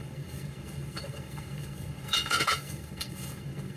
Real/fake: fake